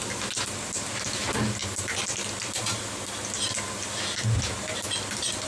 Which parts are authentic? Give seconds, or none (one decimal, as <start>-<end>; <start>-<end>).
0.0-5.5